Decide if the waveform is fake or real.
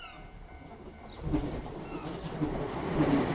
fake